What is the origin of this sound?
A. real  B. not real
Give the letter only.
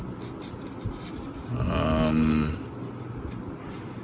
A